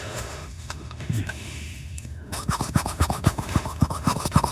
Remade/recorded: remade